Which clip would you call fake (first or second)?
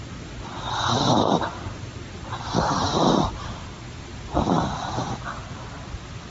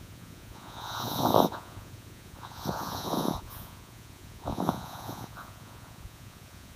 second